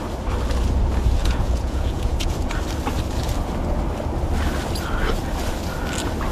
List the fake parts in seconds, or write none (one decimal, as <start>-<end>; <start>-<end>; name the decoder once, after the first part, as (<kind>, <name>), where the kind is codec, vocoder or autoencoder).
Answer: 1.2-2.5 (vocoder, Vocos)